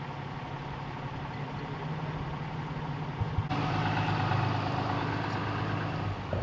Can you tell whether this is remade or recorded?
recorded